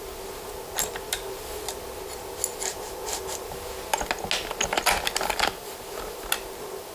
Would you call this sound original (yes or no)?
yes